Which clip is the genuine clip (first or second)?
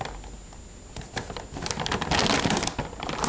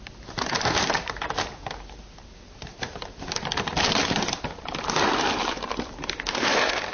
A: first